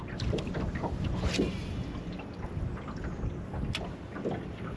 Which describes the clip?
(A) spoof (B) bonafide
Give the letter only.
B